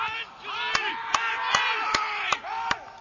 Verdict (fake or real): real